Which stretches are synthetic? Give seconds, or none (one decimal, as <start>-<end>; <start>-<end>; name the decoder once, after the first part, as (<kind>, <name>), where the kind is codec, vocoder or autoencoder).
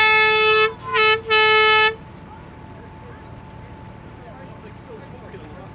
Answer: none